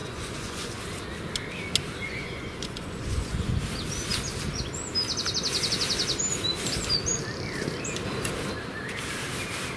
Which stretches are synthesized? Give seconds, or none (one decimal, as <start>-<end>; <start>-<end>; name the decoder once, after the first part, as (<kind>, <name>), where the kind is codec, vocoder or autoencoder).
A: 0.0-0.8 (vocoder, Vocos); 2.0-3.6